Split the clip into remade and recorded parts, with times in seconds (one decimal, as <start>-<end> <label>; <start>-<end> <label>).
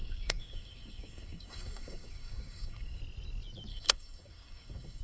0.0-3.0 remade; 3.0-3.7 recorded; 3.7-5.0 remade